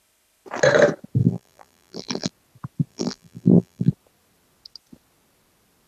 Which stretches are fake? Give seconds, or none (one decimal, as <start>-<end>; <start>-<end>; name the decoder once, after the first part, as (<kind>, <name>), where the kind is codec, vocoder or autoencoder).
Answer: 1.2-2.3 (vocoder, BigVGAN v2); 2.9-3.9